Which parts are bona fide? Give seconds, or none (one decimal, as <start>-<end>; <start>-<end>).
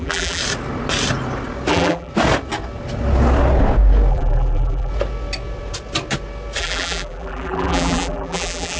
0.4-1.7; 2.1-4.1; 4.9-6.6